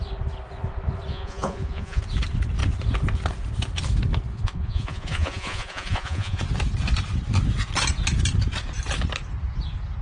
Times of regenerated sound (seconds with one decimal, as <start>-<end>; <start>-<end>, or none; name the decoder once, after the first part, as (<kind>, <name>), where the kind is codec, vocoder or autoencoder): 1.1-2.0 (vocoder, Vocos); 4.3-6.4